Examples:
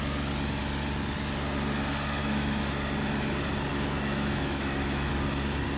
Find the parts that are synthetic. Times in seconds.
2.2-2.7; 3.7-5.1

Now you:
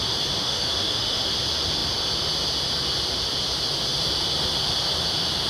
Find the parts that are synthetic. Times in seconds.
0.4-1.3

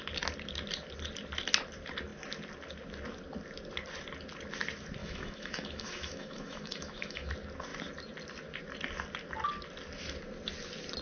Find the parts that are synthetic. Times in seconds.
5.0-7.3